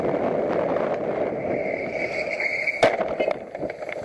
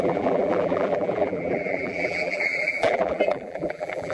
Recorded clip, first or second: first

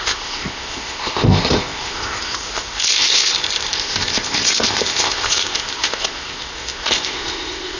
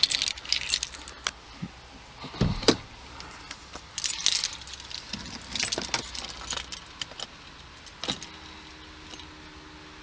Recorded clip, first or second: second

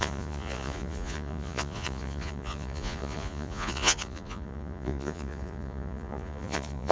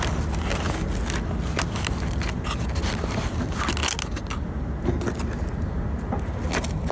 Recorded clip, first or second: second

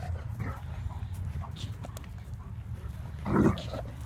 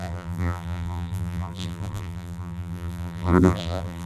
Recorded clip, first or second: first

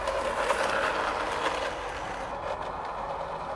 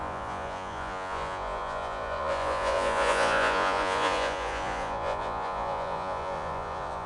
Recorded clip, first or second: first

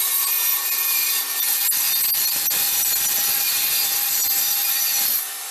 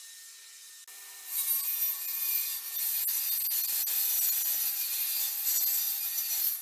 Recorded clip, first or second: second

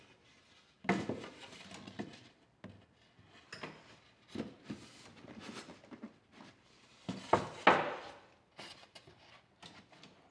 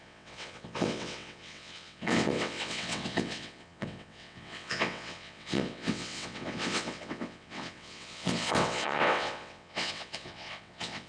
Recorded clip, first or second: first